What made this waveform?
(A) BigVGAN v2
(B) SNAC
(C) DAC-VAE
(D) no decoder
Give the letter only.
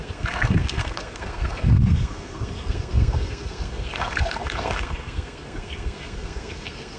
B